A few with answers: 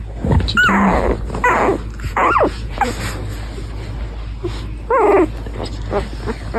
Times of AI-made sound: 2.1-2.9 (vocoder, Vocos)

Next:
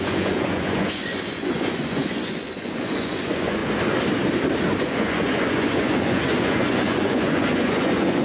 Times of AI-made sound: 0.0-3.6 (vocoder, Vocos); 4.8-8.2

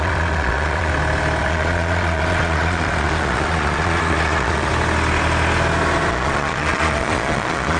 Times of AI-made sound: 0.0-0.9 (vocoder, Vocos); 1.4-4.7; 6.1-7.8